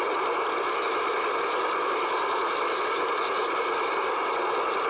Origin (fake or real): real